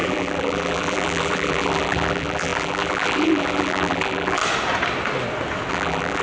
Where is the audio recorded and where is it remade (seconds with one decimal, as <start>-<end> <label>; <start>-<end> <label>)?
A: 0.0-4.4 remade; 4.4-5.7 recorded; 5.7-6.2 remade